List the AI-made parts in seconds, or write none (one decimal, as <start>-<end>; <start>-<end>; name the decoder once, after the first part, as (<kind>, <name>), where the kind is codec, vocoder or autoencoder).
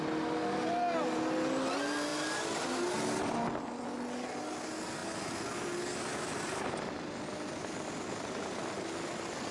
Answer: none